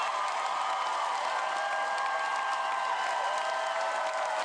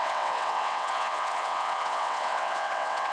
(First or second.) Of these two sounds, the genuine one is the first